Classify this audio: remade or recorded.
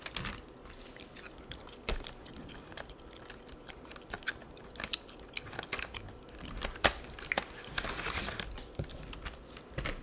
recorded